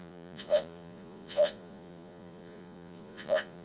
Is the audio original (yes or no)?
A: no